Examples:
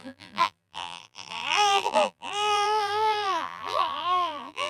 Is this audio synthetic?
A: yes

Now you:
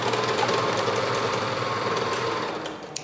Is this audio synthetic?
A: no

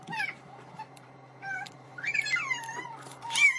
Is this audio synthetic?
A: yes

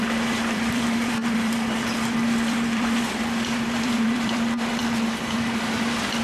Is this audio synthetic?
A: yes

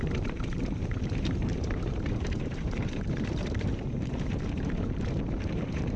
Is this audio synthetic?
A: yes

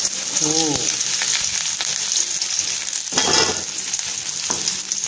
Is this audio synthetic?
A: no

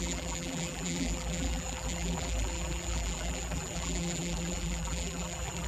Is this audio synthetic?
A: yes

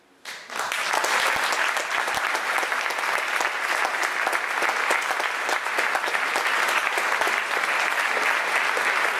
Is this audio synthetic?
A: no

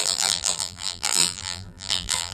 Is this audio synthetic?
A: yes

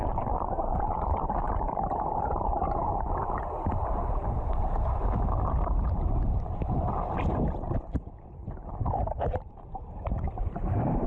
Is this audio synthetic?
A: yes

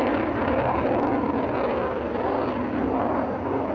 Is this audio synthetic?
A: yes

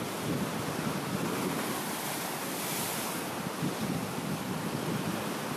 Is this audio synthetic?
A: yes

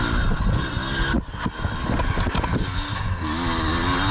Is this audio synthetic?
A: no